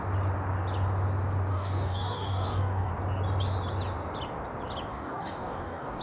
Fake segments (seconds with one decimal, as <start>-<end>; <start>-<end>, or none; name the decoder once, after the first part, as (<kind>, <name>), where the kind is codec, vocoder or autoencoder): 1.5-2.9 (codec, DAC); 4.9-6.0